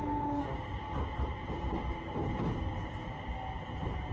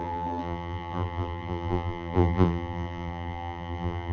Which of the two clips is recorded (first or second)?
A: first